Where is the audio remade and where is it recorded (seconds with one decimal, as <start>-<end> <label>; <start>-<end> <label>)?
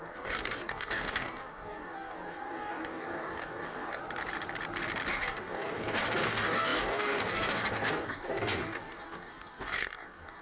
0.0-4.0 remade; 4.0-5.1 recorded; 5.1-10.4 remade